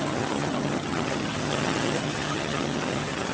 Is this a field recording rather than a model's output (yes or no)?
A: no